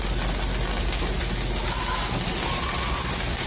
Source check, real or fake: real